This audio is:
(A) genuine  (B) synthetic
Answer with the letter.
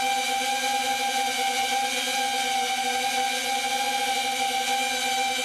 A